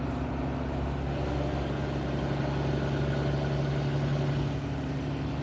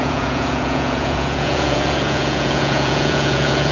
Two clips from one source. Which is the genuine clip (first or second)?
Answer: first